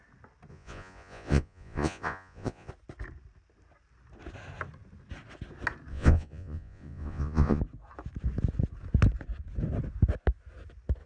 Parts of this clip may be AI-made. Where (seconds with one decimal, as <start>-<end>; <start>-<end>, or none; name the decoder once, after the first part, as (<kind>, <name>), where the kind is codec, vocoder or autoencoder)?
0.5-2.7 (vocoder, Vocos); 5.9-7.6